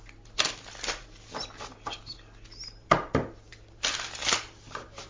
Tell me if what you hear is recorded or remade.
recorded